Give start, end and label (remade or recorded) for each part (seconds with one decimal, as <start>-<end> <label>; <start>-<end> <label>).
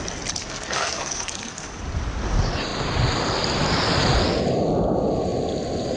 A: 0.0-0.4 recorded; 0.4-1.8 remade; 1.8-6.0 recorded